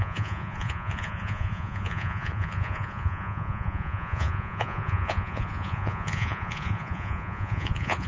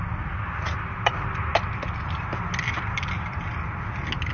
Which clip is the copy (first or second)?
first